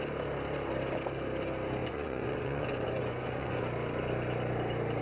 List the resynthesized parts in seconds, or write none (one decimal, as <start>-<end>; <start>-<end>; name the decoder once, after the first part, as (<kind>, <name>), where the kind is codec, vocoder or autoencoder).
1.8-3.6 (vocoder, Vocos)